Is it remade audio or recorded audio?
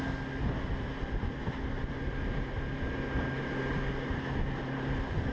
recorded